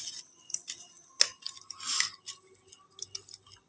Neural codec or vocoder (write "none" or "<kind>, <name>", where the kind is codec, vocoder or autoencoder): none